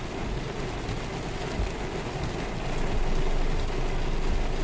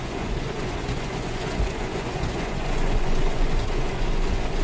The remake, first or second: second